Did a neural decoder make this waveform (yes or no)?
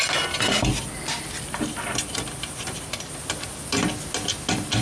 no